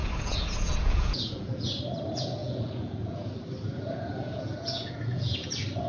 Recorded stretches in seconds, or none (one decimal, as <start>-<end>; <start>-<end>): 1.7-2.4; 3.3-4.1; 5.5-5.9